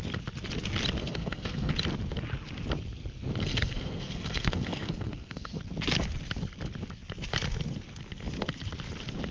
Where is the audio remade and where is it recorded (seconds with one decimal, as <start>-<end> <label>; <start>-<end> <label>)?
0.0-1.0 recorded; 1.0-1.7 remade; 1.7-3.4 recorded; 3.4-5.6 remade; 5.6-9.3 recorded